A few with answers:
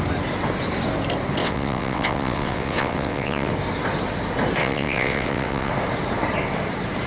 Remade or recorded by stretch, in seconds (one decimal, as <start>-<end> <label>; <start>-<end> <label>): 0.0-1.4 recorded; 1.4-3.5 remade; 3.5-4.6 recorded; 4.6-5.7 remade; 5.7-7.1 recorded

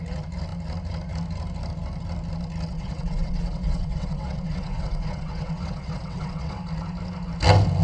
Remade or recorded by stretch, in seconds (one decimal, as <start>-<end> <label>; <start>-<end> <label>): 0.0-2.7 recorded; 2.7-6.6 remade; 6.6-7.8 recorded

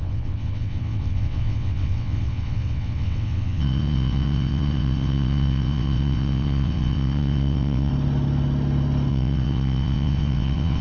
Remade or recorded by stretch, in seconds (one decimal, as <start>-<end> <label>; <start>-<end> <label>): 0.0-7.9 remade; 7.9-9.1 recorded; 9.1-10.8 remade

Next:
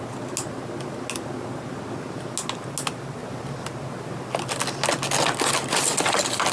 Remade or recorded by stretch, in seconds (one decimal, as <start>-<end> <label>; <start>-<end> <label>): 0.0-6.5 recorded

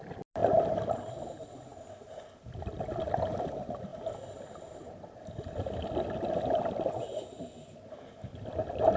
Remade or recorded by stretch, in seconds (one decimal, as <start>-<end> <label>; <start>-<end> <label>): 0.0-9.0 recorded